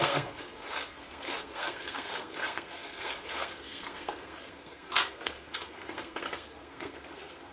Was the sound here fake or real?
fake